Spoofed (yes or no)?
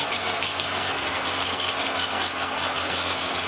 yes